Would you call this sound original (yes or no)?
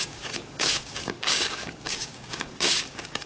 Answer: no